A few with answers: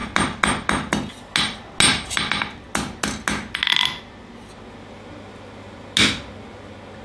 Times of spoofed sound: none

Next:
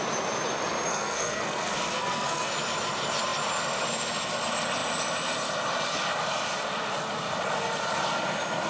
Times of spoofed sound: 0.9-2.5 (codec, SNAC)

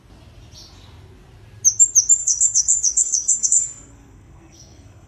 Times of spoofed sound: 2.2-5.1 (codec, SNAC)

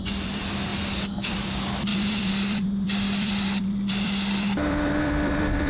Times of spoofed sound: 0.0-0.7 (vocoder, BigVGAN v2); 1.3-5.7

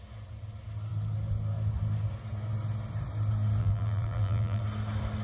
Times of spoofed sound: 3.6-4.6 (vocoder, BigVGAN v2)